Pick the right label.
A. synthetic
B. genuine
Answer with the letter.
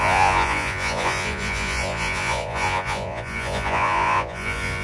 A